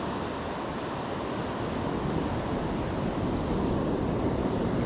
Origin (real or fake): real